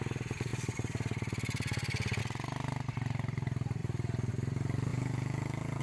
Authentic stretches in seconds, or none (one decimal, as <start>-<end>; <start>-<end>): 0.0-4.9